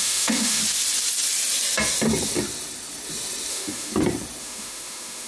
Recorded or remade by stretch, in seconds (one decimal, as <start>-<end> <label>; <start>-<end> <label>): 0.0-0.6 remade; 0.6-3.5 recorded; 3.5-3.9 remade; 3.9-4.4 recorded; 4.4-5.3 remade